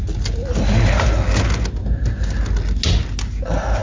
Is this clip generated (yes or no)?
no